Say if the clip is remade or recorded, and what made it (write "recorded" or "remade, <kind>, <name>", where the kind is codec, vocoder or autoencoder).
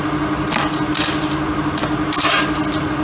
recorded